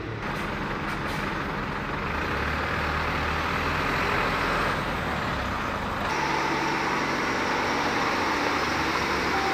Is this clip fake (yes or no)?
no